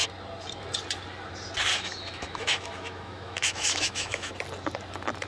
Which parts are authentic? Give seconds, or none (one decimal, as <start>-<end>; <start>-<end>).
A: 0.0-1.7; 4.3-5.3